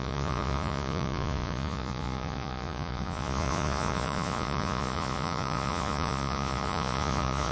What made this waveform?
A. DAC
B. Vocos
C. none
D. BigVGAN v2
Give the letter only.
B